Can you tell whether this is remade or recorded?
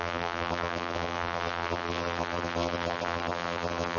remade